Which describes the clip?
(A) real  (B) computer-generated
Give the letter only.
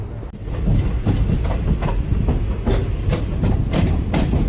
A